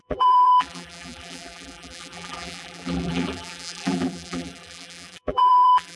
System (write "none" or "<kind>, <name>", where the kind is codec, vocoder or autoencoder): vocoder, BigVGAN v2